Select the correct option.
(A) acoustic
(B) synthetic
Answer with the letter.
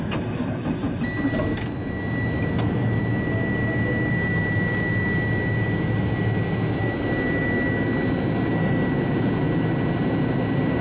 A